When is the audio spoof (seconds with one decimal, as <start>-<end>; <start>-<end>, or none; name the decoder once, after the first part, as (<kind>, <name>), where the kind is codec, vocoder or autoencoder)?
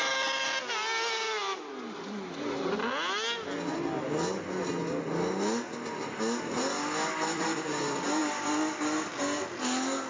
none